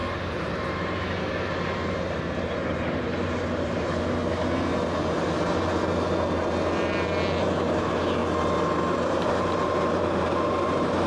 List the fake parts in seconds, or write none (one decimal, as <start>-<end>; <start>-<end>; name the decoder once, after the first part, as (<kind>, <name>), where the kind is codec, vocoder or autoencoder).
0.0-4.2 (vocoder, BigVGAN v2); 7.4-8.2; 8.9-11.1

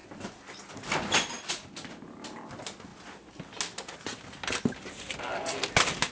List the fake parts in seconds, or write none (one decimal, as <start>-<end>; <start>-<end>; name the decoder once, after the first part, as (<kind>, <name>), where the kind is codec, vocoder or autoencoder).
none

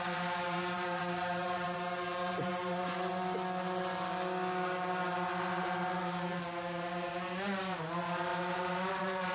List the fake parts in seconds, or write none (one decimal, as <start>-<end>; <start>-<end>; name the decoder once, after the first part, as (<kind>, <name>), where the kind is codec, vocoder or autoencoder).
0.0-3.1 (vocoder, BigVGAN v2); 7.1-9.3

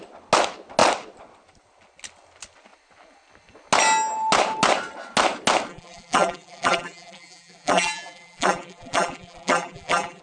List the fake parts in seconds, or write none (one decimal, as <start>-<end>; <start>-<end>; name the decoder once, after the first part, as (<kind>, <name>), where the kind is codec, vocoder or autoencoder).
5.7-10.2 (vocoder, BigVGAN v2)

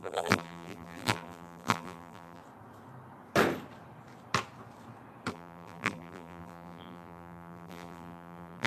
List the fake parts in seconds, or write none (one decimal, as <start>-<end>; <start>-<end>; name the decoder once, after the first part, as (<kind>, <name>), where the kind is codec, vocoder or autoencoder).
0.0-2.4 (vocoder, BigVGAN v2); 5.3-8.7

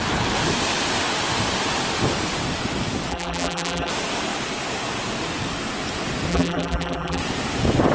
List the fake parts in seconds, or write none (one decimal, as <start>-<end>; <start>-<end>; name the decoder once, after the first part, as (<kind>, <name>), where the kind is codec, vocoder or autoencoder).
3.1-3.9 (vocoder, BigVGAN v2); 6.3-7.2